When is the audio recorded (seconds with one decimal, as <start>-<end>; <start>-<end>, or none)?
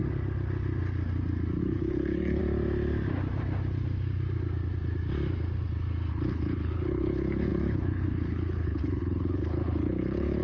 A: 0.0-1.6; 2.4-6.1